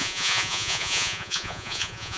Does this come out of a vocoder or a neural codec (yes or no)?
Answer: yes